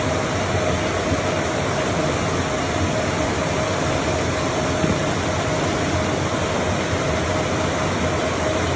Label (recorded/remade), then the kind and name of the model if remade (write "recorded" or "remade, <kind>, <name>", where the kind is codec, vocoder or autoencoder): recorded